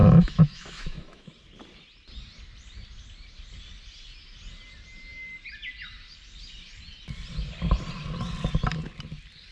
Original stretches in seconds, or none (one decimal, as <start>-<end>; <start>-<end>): 1.3-9.5